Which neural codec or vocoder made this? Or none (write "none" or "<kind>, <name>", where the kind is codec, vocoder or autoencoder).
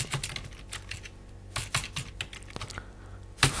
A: none